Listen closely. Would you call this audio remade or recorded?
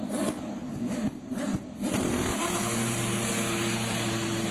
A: recorded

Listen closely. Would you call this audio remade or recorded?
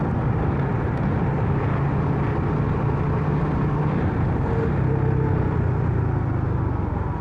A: recorded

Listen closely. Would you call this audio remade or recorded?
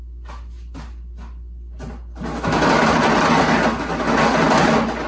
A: recorded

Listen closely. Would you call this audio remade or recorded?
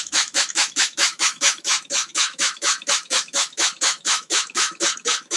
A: remade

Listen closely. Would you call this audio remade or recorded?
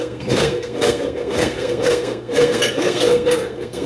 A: remade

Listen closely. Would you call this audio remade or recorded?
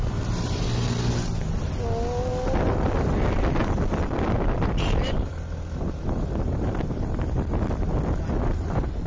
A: recorded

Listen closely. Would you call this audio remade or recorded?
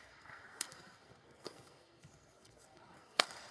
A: remade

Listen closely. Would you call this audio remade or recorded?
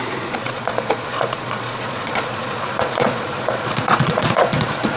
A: remade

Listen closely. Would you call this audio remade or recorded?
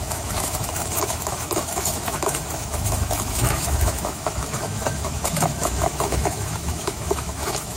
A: remade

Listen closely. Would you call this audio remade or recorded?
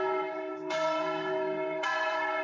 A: remade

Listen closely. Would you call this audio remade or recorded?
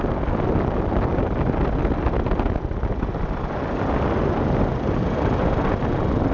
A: recorded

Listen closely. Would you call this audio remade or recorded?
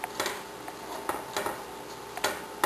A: recorded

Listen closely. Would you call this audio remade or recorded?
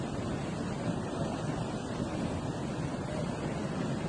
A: recorded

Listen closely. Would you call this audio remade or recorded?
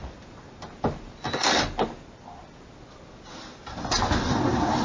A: recorded